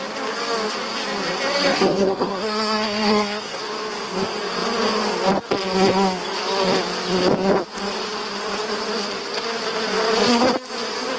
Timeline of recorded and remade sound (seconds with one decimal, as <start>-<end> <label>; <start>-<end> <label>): 0.0-1.7 recorded; 1.7-3.6 remade; 3.6-11.2 recorded